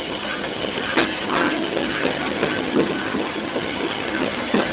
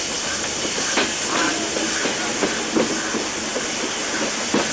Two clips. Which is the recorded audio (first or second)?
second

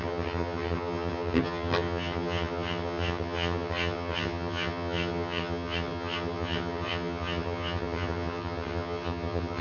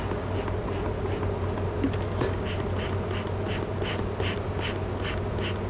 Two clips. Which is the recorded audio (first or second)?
second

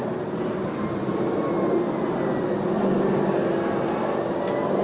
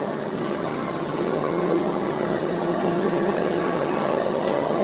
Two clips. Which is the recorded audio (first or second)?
first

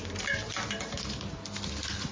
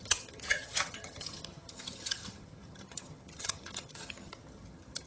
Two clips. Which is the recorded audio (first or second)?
first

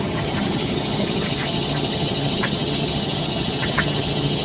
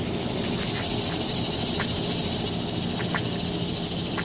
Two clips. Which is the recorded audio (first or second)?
second